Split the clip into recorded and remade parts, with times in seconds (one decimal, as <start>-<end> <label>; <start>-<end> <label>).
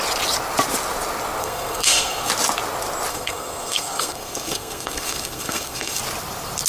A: 0.0-1.4 recorded; 1.4-2.3 remade; 2.3-3.1 recorded; 3.1-6.0 remade; 6.0-6.7 recorded